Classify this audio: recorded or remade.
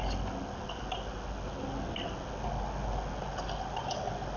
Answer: recorded